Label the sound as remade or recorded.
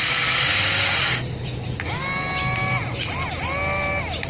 recorded